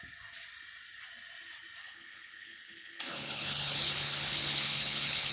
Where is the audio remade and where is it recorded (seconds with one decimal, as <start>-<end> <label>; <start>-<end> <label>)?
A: 0.0-1.8 recorded; 1.8-5.3 remade